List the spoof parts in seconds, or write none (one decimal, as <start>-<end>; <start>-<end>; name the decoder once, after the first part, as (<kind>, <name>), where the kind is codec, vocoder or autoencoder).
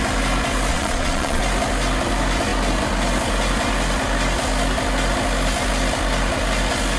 0.7-1.4 (vocoder, Vocos)